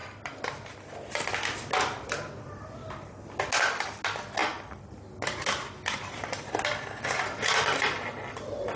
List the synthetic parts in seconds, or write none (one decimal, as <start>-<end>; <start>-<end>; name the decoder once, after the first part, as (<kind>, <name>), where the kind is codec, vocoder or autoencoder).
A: none